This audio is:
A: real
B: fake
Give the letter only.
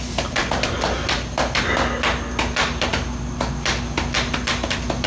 A